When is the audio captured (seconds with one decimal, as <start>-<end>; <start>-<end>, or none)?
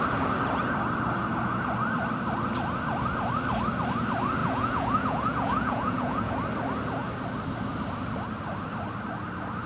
0.0-4.4; 6.3-9.7